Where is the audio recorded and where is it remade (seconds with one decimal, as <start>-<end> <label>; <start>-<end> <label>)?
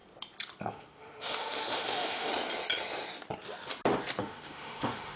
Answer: 0.0-0.6 recorded; 0.6-2.3 remade; 2.3-4.2 recorded; 4.2-5.2 remade